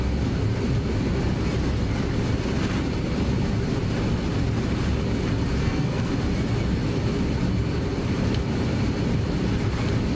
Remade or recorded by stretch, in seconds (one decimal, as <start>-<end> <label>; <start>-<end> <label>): 0.0-5.6 recorded; 5.6-6.1 remade; 6.1-10.2 recorded